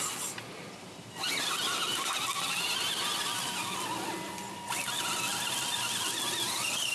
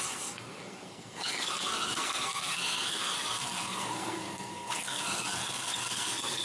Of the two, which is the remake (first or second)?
second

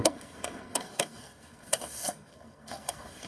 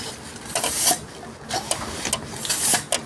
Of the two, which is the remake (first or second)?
first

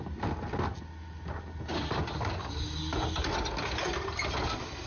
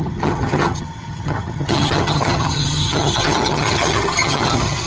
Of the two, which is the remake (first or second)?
second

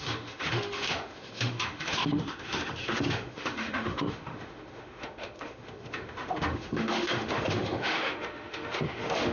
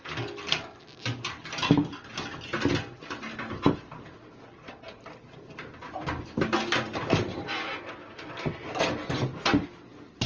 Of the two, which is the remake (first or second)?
first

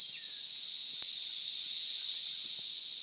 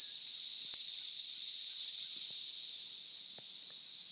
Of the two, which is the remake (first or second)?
first